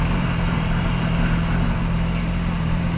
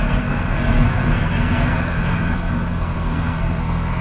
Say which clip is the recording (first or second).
first